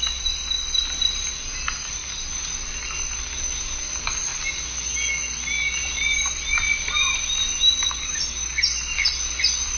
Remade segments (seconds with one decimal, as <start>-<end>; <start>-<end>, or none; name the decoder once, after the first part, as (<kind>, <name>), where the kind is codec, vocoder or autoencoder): none